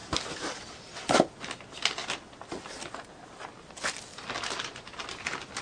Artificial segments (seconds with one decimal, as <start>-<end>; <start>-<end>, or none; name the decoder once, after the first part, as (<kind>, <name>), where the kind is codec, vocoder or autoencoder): none